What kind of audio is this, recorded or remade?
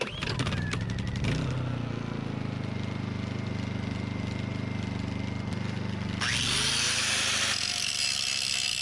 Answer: recorded